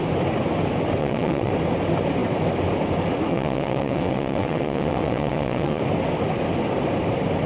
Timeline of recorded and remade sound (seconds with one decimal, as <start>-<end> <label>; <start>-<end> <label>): 0.0-1.0 recorded; 1.0-1.5 remade; 1.5-3.3 recorded; 3.3-5.8 remade; 5.8-7.5 recorded